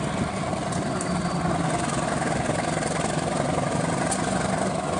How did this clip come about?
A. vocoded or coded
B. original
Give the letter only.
B